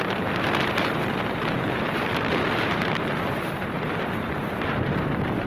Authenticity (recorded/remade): remade